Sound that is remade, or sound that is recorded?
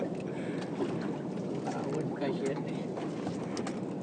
recorded